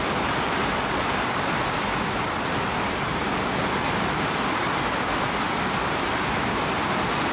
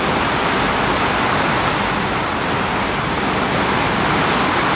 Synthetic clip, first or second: first